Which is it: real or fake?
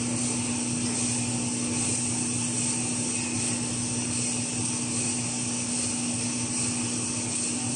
real